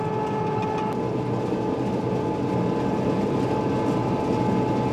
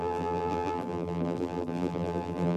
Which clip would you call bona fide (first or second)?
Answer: first